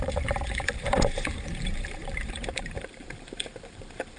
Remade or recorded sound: remade